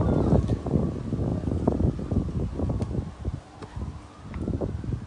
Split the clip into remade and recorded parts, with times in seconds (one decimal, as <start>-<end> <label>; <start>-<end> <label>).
0.0-5.1 recorded